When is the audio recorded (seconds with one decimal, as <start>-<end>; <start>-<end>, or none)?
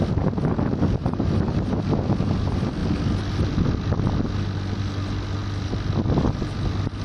0.0-1.0; 1.8-7.0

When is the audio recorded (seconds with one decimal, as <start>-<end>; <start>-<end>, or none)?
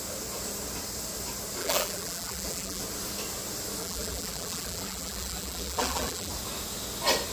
0.0-1.6; 2.8-3.8; 6.3-7.3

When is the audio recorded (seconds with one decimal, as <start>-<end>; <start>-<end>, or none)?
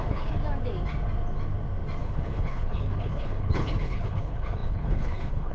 0.4-2.0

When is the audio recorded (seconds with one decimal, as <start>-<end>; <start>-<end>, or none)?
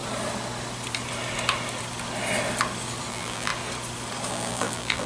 0.0-3.1; 3.5-4.3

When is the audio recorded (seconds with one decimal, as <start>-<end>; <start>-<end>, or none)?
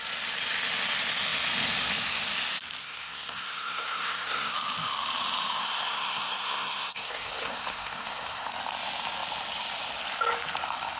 0.0-2.8; 4.5-5.6; 8.5-11.0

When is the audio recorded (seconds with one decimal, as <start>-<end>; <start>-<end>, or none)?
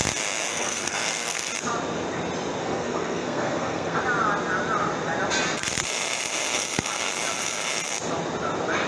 0.0-0.5; 1.5-2.6; 4.0-8.9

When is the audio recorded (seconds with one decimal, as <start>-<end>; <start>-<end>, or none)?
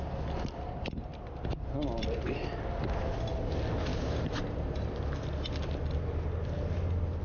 0.0-3.9; 5.0-7.2